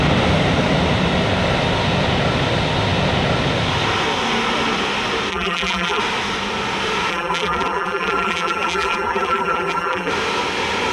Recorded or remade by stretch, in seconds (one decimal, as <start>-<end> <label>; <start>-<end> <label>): 0.0-5.3 recorded; 5.3-6.0 remade; 6.0-7.1 recorded; 7.1-10.1 remade; 10.1-10.9 recorded